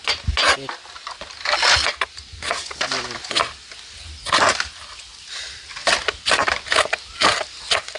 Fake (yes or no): no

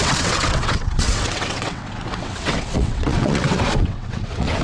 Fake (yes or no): yes